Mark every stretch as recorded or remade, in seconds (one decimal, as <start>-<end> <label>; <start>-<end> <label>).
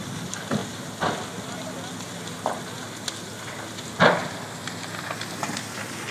0.0-6.1 recorded